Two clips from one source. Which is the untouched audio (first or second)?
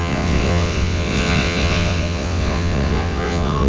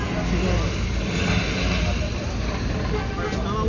second